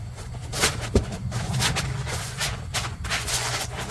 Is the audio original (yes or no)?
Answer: no